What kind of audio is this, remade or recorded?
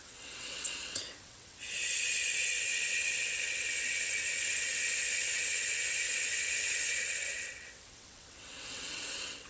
remade